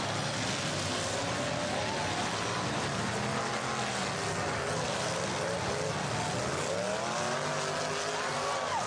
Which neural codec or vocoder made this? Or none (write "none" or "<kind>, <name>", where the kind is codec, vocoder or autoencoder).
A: none